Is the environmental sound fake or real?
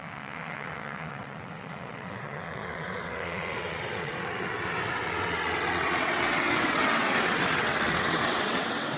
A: fake